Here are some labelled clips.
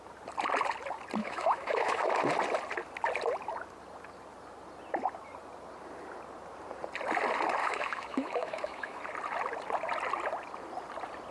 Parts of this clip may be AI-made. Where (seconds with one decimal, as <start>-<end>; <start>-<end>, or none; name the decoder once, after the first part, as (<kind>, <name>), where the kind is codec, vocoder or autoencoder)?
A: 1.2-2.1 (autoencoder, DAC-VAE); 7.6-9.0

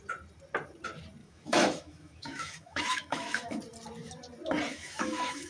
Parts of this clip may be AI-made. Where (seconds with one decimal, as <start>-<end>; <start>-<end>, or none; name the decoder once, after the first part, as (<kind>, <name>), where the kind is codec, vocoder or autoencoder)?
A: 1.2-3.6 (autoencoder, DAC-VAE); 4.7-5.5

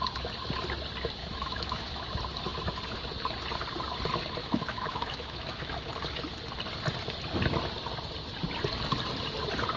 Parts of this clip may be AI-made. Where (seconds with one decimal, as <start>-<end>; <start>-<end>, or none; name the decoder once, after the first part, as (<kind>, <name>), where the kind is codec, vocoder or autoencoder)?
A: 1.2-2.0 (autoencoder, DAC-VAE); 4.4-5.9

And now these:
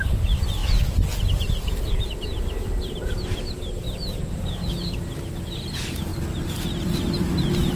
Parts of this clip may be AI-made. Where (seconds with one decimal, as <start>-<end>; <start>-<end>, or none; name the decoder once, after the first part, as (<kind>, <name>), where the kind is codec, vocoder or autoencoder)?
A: none

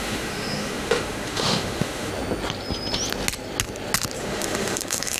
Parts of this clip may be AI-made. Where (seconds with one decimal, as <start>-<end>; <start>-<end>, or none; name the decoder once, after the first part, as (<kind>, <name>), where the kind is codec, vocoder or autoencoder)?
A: 0.0-2.1 (autoencoder, DAC-VAE); 4.2-5.2